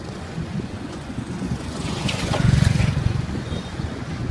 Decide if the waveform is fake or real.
fake